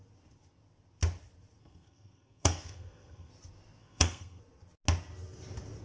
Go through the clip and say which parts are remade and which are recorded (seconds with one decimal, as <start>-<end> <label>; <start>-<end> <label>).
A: 0.0-1.6 recorded; 1.6-3.3 remade; 3.3-3.8 recorded; 3.8-4.4 remade; 4.4-5.8 recorded